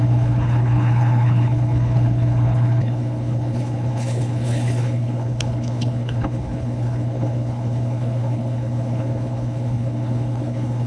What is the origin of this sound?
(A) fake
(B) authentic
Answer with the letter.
A